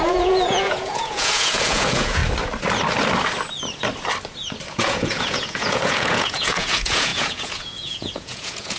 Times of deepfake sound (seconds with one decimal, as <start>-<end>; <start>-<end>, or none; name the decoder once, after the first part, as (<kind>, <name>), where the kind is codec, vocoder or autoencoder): 0.0-2.2 (vocoder, Vocos); 4.7-8.8

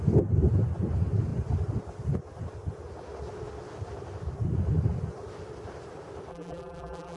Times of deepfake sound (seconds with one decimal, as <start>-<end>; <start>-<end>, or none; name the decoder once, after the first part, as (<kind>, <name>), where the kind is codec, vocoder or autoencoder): 6.3-7.2 (vocoder, BigVGAN v2)